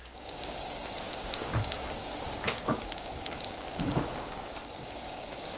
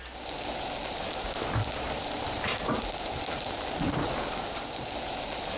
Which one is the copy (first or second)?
first